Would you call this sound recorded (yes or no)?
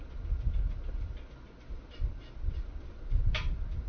yes